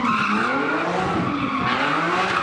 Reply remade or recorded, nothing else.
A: recorded